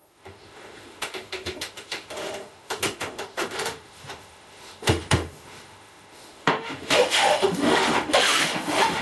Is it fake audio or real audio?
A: fake